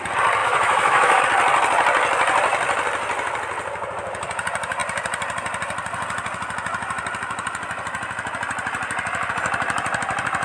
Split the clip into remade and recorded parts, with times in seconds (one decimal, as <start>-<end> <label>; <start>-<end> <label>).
0.0-0.4 recorded; 0.4-1.2 remade; 1.2-10.4 recorded